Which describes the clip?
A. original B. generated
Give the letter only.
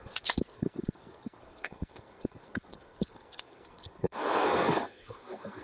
B